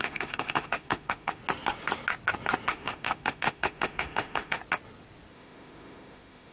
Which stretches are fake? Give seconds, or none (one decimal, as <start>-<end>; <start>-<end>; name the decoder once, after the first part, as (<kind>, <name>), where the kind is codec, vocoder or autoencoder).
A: 0.0-1.4 (autoencoder, DAC-VAE); 2.7-4.6; 5.3-6.5